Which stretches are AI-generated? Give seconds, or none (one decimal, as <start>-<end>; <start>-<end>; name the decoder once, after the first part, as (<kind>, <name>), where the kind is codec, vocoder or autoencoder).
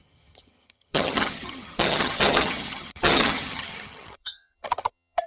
0.0-5.3 (vocoder, HiFi-GAN)